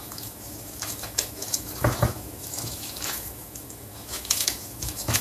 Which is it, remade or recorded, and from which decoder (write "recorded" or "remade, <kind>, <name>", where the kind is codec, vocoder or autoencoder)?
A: remade, autoencoder, DAC-VAE